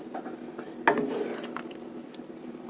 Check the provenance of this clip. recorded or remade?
recorded